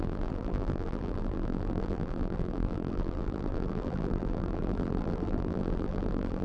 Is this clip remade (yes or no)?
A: yes